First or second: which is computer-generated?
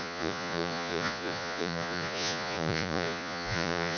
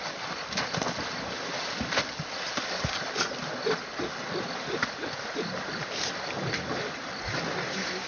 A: first